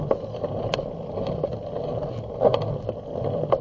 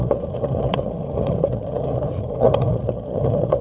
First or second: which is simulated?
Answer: second